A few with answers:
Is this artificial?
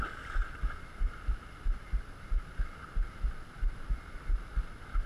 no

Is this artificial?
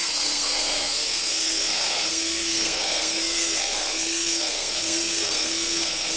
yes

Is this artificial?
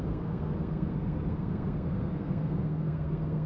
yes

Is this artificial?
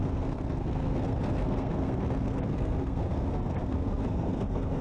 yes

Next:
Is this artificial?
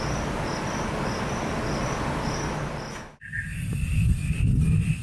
no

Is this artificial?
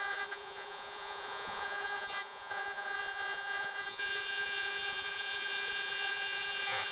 yes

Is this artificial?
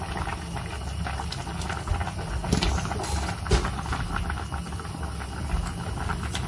no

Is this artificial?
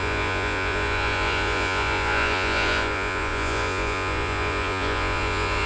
yes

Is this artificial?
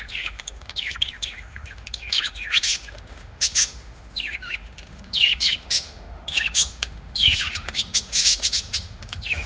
yes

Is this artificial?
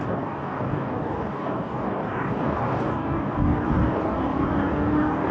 yes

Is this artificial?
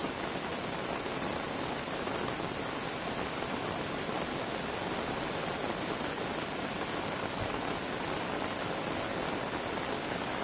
no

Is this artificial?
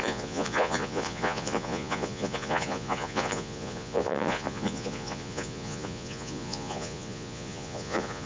yes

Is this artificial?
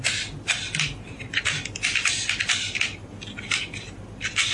no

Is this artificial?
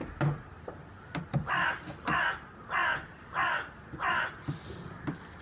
no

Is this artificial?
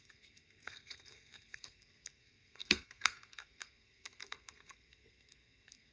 yes